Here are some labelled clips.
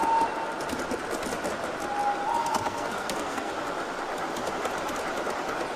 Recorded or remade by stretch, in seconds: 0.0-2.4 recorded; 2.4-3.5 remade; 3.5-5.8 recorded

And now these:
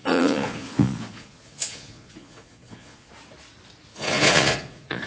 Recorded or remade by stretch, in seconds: 0.0-3.1 remade; 3.1-3.9 recorded; 3.9-5.1 remade

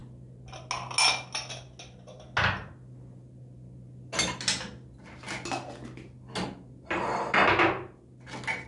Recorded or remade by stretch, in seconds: 0.0-8.7 recorded

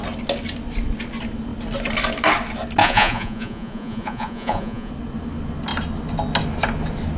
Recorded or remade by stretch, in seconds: 0.0-2.8 recorded; 2.8-4.9 remade; 4.9-7.2 recorded

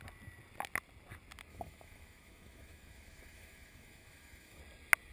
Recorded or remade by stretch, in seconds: 0.0-1.5 recorded; 1.5-4.6 remade; 4.6-5.1 recorded

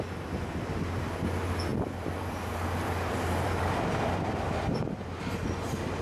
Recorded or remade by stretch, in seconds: 0.0-1.7 recorded; 1.7-5.3 remade; 5.3-6.0 recorded

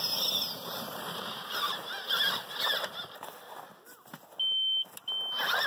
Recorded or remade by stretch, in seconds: 0.0-0.6 recorded; 0.6-2.4 remade; 2.4-5.7 recorded

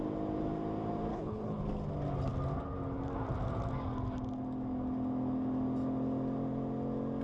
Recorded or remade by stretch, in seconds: 0.0-1.1 recorded; 1.1-1.6 remade; 1.6-7.2 recorded